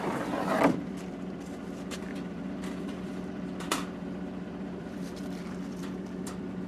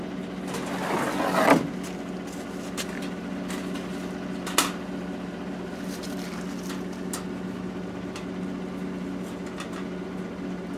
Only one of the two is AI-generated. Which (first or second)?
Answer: first